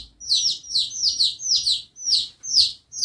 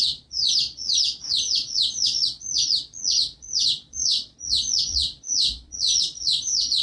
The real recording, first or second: first